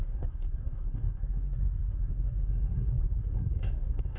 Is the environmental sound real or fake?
fake